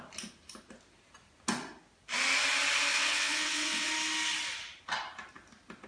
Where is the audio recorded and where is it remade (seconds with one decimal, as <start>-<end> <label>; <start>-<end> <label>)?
0.0-2.9 recorded; 2.9-3.9 remade; 3.9-5.9 recorded